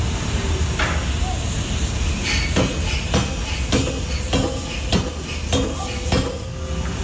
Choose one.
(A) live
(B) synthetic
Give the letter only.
A